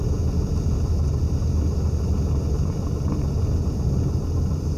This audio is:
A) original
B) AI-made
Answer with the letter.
A